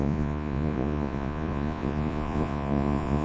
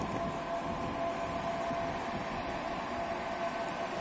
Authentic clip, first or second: second